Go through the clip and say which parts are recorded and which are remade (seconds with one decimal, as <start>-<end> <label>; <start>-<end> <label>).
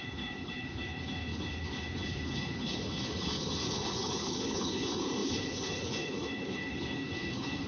0.0-7.7 remade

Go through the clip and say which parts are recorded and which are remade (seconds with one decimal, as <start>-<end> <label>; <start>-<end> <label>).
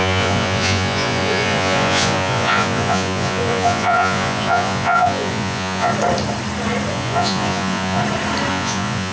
0.0-5.9 remade; 5.9-6.9 recorded; 6.9-8.0 remade; 8.0-8.5 recorded; 8.5-9.1 remade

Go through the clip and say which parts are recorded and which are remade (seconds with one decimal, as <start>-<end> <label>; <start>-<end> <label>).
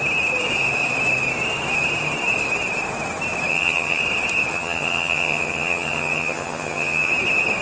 0.0-3.5 recorded; 3.5-4.0 remade; 4.0-4.5 recorded; 4.5-7.1 remade; 7.1-7.6 recorded